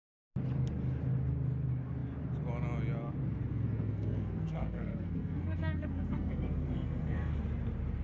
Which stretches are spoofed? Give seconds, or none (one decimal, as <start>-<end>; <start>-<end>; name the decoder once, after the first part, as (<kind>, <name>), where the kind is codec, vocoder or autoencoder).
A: 3.5-7.4 (codec, SNAC)